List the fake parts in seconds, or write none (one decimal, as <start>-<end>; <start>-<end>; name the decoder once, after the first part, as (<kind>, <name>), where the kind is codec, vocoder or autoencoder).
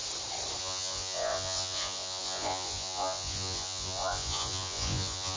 0.6-5.4 (vocoder, Vocos)